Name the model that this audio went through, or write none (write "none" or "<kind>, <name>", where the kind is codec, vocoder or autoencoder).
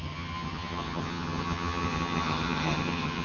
vocoder, HiFi-GAN